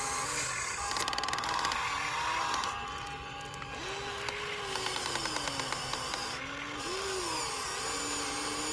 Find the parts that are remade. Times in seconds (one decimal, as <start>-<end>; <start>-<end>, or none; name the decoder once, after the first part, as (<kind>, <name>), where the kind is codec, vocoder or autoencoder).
none